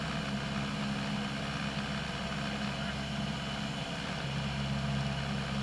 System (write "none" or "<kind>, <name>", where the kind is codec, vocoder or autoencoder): none